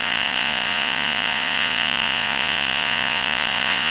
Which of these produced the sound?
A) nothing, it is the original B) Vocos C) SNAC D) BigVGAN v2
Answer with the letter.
B